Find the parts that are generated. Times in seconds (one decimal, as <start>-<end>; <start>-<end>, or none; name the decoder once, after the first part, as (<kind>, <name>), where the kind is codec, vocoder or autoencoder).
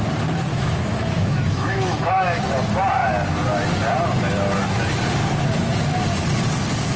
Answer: 0.5-2.4 (autoencoder, DAC-VAE)